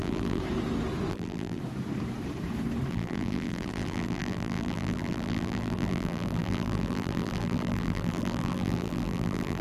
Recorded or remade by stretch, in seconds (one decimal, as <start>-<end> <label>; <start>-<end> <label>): 0.0-0.4 remade; 0.4-1.1 recorded; 1.1-1.6 remade; 1.6-2.9 recorded; 2.9-9.6 remade